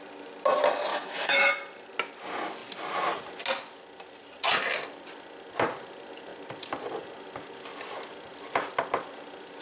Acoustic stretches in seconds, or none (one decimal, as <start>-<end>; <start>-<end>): 0.0-0.9; 1.5-9.6